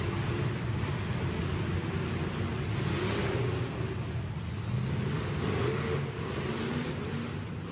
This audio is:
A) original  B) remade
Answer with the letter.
A